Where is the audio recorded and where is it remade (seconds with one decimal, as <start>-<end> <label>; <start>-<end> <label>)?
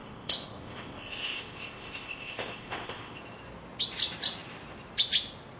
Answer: 0.0-3.2 remade; 3.2-5.6 recorded